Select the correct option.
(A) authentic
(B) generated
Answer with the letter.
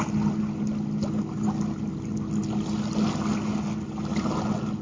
A